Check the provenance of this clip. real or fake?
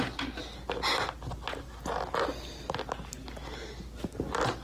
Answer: real